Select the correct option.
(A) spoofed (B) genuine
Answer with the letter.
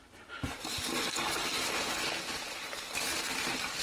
B